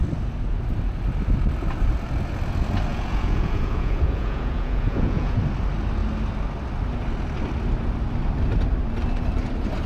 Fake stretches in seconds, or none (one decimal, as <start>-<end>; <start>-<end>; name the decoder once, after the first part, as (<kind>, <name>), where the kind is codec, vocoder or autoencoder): 2.9-5.4 (vocoder, Vocos)